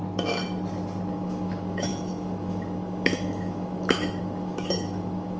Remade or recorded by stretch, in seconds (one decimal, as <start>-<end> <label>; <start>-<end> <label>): 0.0-1.1 recorded; 1.1-5.4 remade